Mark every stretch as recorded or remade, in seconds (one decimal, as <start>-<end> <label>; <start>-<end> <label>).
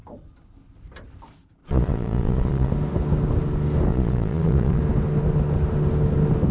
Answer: 0.0-1.6 recorded; 1.6-2.7 remade; 2.7-3.9 recorded; 3.9-4.8 remade; 4.8-6.5 recorded